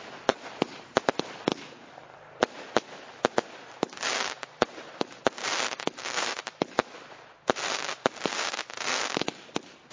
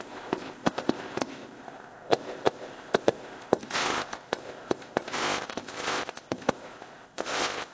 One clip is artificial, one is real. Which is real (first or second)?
first